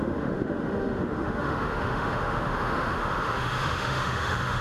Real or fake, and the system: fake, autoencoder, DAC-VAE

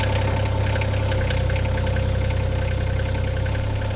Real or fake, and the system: real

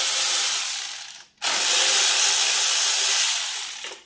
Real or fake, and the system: real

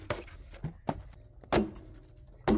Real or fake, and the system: real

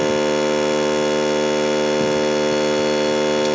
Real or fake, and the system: real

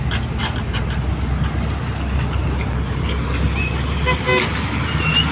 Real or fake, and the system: real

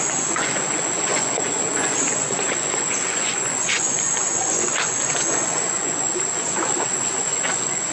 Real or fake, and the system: fake, vocoder, Vocos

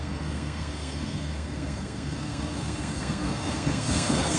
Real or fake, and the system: fake, codec, SNAC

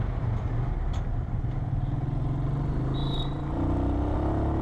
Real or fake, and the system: real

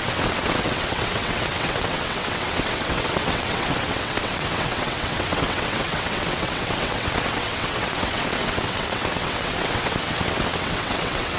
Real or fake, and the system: fake, vocoder, WaveNeXt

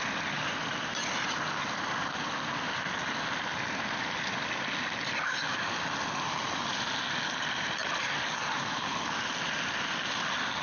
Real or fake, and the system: real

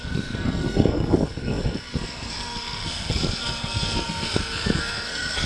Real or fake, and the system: fake, codec, SNAC